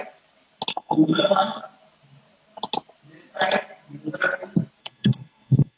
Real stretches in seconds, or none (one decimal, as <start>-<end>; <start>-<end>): 0.0-0.7; 1.6-4.8